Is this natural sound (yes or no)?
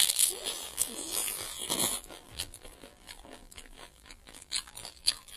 no